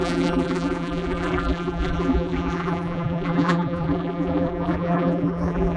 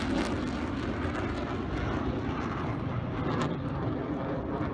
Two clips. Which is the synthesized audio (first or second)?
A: first